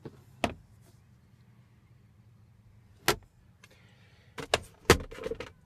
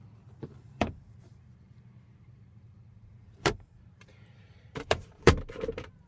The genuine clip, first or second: first